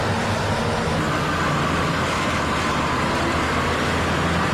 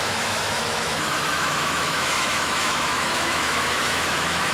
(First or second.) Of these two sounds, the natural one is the first